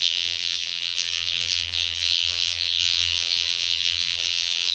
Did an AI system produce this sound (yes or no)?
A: yes